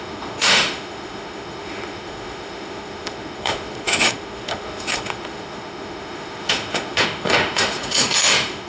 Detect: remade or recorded remade